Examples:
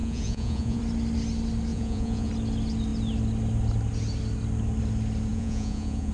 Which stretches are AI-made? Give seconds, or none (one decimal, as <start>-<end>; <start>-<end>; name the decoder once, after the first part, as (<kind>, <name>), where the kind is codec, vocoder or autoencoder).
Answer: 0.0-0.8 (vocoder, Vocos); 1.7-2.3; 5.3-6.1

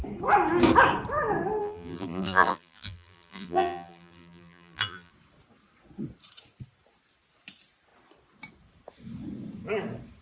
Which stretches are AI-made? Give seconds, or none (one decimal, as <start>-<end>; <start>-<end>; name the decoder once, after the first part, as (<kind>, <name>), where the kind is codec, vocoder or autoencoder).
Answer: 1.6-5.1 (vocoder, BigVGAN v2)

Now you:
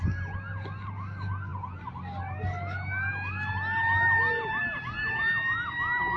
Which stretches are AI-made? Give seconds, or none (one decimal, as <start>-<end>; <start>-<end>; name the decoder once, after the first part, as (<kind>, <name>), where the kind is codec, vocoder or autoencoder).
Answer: none